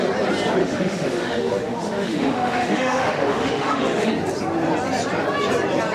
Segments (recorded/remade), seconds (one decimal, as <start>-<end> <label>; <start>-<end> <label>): 0.0-0.6 recorded; 0.6-4.1 remade; 4.1-5.9 recorded